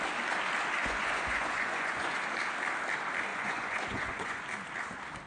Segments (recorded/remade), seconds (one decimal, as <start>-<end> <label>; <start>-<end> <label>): 0.0-0.8 recorded; 0.8-2.2 remade; 2.2-3.3 recorded; 3.3-4.4 remade; 4.4-5.3 recorded